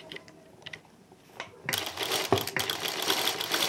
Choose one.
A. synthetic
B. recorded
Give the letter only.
B